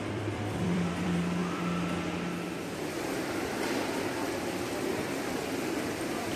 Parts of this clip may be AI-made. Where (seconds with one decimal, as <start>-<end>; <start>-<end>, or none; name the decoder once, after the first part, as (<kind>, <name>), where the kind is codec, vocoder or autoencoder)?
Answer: 0.0-1.4 (vocoder, BigVGAN v2); 4.5-6.4